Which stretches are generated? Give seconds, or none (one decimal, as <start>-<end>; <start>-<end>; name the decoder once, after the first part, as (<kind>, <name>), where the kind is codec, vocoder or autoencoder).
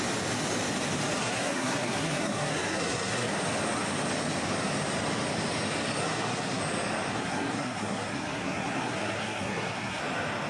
1.2-3.3 (codec, SNAC); 6.0-6.6; 7.1-10.0